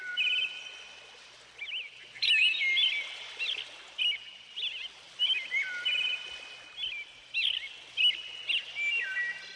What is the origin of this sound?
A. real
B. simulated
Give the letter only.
A